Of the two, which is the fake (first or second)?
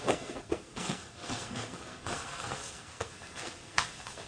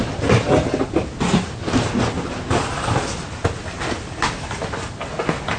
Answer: first